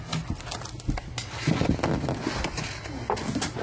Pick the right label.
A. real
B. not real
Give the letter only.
A